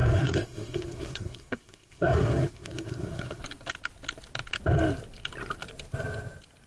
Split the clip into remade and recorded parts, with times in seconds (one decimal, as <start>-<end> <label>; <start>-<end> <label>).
0.0-3.4 remade; 3.4-6.7 recorded